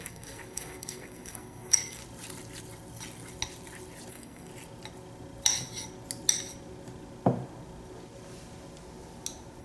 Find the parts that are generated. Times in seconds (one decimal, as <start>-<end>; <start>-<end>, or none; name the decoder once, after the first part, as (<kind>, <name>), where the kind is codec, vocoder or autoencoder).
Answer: 0.0-2.0 (codec, SNAC); 4.1-4.5